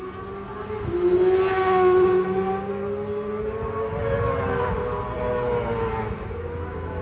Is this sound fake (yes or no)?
no